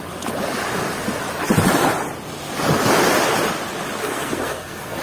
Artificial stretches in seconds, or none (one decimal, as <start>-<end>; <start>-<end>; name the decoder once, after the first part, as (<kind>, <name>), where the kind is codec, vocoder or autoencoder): 4.0-5.0 (codec, SNAC)